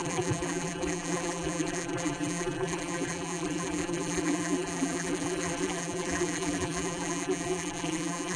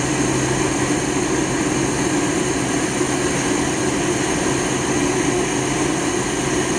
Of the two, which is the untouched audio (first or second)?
second